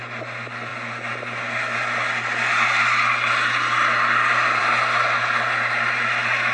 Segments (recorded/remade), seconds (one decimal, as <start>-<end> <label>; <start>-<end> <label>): 0.0-6.5 recorded